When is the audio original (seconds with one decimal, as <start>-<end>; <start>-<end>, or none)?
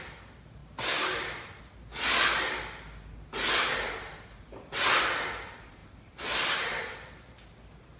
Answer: 0.0-8.0